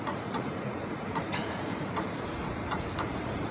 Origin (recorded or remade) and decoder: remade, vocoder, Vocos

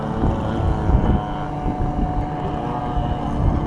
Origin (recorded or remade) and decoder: recorded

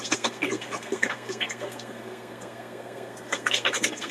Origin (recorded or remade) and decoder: remade, codec, SNAC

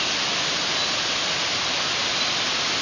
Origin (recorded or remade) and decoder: recorded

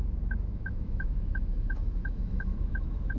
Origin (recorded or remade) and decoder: remade, autoencoder, DAC-VAE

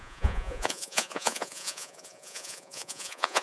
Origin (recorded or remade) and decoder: remade, vocoder, Vocos